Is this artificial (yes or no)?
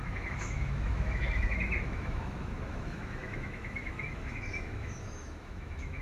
yes